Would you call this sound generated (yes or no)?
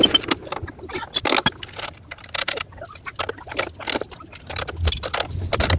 no